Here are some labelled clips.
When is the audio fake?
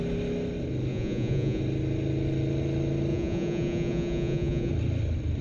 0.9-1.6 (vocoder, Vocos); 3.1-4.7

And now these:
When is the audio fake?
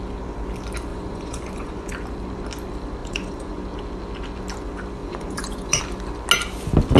0.9-1.9 (vocoder, Vocos); 3.0-3.6; 5.0-5.8